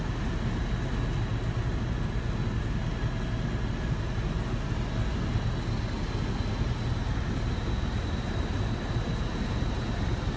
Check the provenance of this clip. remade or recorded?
recorded